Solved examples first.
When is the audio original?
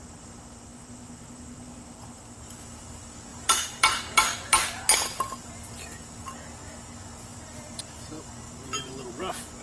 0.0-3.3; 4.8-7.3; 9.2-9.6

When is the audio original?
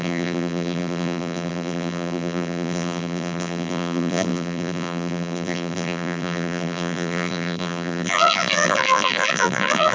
none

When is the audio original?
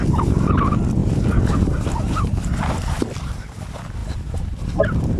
0.0-1.0; 2.7-4.0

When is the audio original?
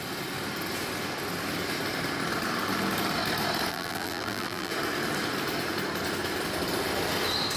0.0-3.7; 4.7-7.6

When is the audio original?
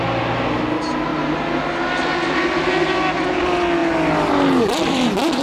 0.0-5.4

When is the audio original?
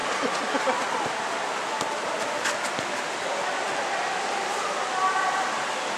0.0-6.0